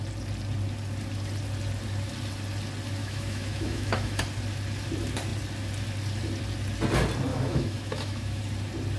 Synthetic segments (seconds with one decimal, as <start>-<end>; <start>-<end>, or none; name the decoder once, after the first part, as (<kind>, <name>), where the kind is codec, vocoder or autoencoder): 3.0-4.2 (autoencoder, DAC-VAE); 7.3-8.4